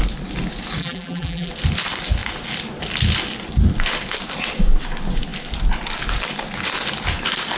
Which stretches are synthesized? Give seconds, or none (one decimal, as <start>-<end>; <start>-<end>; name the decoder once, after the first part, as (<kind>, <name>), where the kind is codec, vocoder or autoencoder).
0.8-1.5 (vocoder, BigVGAN v2)